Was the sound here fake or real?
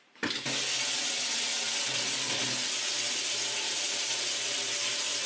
real